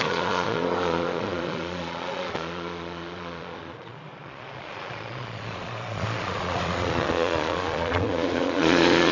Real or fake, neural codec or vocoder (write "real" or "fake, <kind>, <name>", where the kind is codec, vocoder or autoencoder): fake, vocoder, Vocos